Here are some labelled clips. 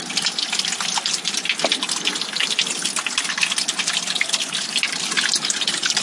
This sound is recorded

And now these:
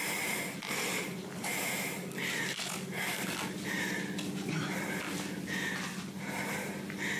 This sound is recorded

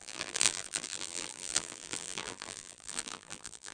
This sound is remade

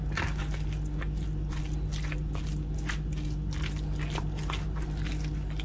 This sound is recorded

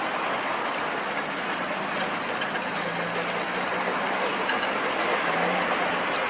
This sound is recorded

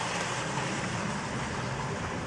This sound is remade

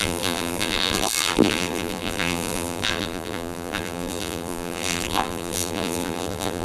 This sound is remade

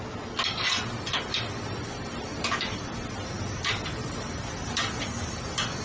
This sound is remade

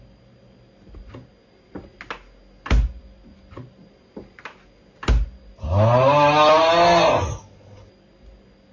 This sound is recorded